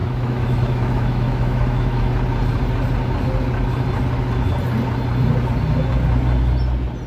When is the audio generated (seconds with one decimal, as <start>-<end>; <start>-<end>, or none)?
0.0-2.1